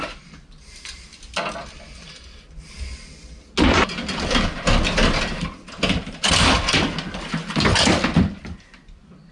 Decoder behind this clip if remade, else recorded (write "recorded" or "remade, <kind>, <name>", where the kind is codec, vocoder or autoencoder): recorded